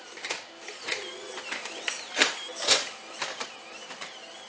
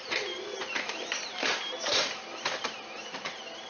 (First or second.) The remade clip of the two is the second